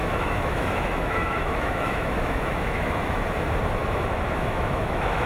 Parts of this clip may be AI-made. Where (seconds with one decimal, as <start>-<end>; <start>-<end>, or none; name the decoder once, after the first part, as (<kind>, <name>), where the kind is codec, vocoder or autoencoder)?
0.0-3.2 (autoencoder, DAC-VAE); 3.8-5.3